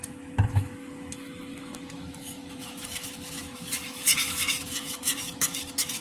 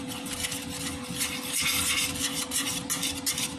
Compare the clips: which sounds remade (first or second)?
first